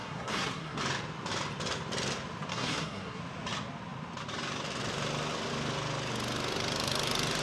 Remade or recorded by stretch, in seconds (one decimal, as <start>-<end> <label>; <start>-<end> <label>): 0.0-0.8 remade; 0.8-2.5 recorded; 2.5-3.2 remade; 3.2-7.4 recorded